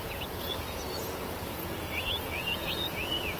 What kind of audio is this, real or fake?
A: fake